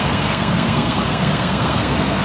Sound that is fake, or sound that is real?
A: fake